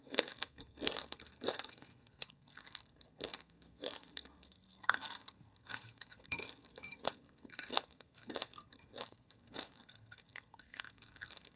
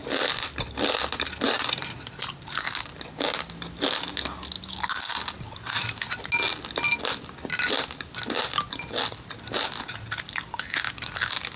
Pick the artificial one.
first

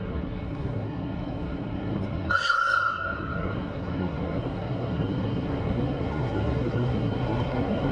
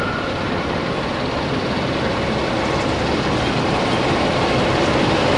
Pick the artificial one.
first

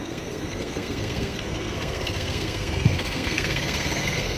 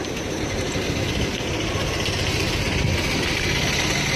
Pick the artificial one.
first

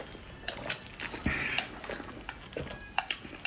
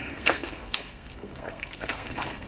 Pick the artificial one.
second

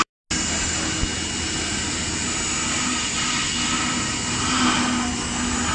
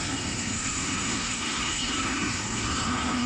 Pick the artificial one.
second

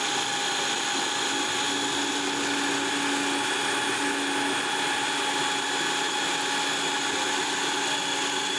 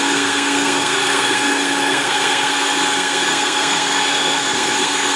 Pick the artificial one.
second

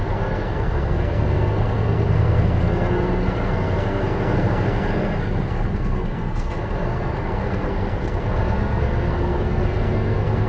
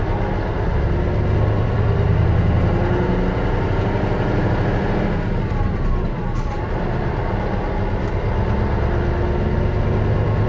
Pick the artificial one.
first